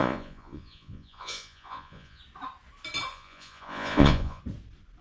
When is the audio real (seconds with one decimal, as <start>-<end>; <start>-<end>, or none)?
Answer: 2.2-3.1; 4.4-5.0